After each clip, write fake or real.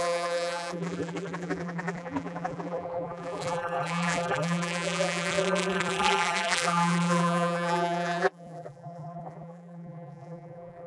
fake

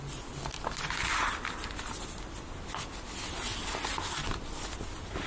real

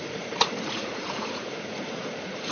fake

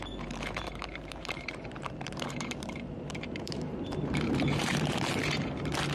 fake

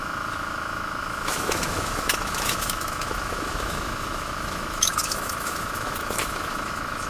fake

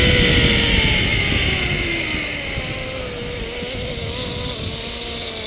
real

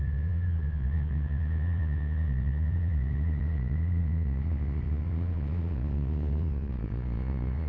fake